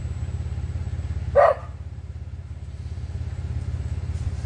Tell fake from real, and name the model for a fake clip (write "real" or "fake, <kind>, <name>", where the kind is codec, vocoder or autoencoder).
real